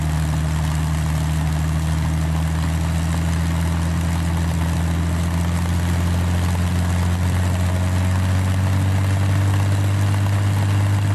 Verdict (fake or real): real